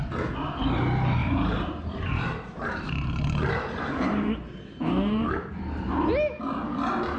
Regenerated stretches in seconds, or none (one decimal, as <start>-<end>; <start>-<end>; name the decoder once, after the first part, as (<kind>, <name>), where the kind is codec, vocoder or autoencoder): 1.2-5.5 (vocoder, BigVGAN v2)